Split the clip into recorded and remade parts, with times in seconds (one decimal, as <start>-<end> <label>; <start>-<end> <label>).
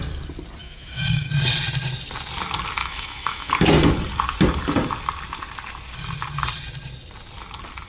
0.0-0.6 recorded; 0.6-1.3 remade; 1.3-2.8 recorded; 2.8-3.5 remade; 3.5-7.9 recorded